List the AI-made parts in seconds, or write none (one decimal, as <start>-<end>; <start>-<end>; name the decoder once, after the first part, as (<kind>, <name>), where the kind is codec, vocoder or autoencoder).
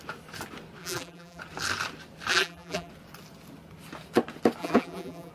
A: 0.8-1.4 (vocoder, BigVGAN v2); 2.3-2.9; 4.6-5.3